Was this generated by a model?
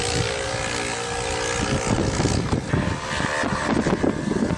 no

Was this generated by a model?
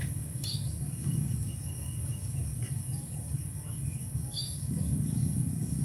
yes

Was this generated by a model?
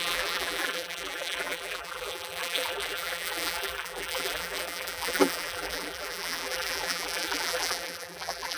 yes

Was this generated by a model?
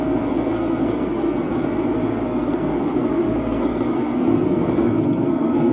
yes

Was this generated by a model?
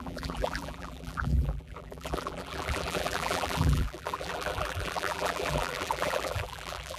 yes